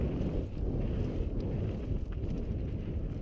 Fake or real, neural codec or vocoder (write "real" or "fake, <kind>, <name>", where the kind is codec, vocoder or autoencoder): real